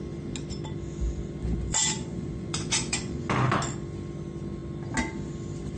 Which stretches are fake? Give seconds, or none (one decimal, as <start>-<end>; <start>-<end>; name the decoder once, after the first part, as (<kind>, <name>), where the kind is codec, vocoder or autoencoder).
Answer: 1.4-3.3 (vocoder, Vocos)